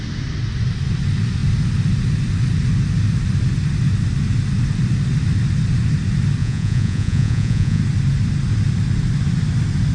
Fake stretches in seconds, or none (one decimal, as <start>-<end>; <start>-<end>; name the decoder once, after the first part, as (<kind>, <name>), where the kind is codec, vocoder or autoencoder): 6.4-7.8 (vocoder, Vocos)